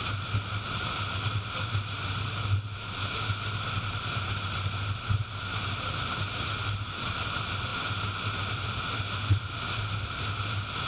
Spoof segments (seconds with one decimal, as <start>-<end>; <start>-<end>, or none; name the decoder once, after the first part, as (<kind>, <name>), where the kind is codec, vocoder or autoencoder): none